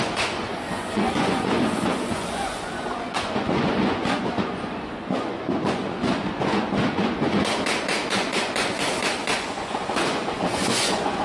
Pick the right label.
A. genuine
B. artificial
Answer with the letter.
B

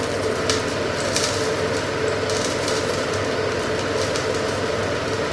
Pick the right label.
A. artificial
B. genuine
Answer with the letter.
B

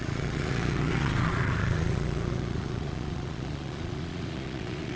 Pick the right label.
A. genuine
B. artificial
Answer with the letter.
B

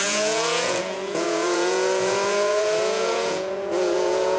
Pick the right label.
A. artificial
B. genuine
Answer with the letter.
A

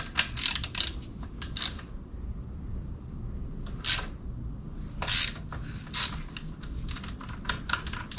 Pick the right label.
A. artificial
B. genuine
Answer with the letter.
B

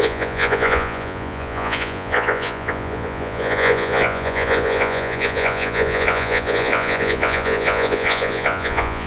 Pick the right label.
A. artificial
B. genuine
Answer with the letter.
A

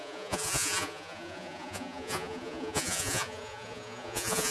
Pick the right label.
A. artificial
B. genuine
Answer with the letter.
A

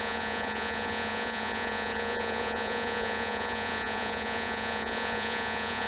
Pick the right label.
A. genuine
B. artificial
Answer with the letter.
B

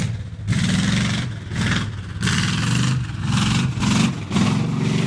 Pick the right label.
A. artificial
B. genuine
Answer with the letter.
B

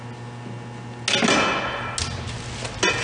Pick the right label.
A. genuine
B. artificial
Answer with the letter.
A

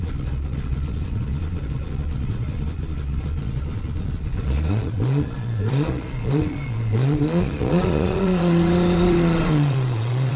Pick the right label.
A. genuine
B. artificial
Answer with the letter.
B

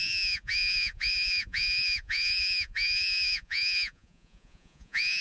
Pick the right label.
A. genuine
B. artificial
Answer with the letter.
B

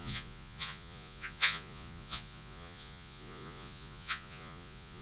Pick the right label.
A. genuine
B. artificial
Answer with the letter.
B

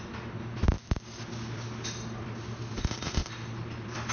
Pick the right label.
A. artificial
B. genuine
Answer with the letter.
B